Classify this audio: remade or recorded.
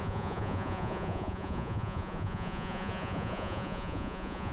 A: remade